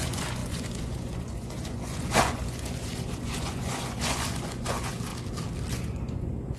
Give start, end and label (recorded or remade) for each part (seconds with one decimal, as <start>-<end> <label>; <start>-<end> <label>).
0.0-5.1 remade; 5.1-5.7 recorded; 5.7-6.6 remade